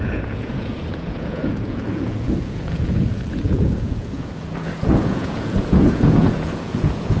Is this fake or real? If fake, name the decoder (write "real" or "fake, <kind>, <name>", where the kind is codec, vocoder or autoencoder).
fake, vocoder, Vocos